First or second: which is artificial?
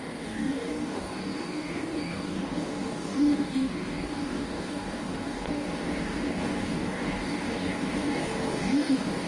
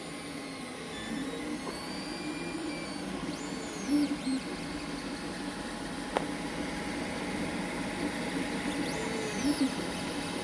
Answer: first